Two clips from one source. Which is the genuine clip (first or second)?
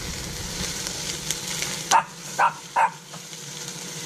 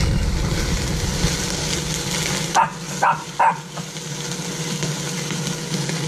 second